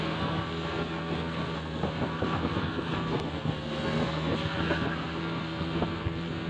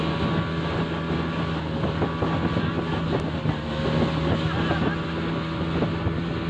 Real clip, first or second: second